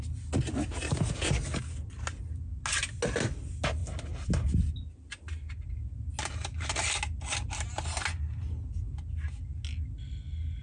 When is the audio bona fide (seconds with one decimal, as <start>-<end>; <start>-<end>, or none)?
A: 0.0-10.6